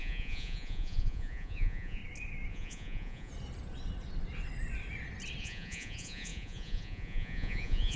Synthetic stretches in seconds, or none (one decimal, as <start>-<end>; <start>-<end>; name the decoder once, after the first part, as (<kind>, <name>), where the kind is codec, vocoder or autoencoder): 0.0-2.0 (vocoder, Vocos); 2.5-3.3; 5.4-8.0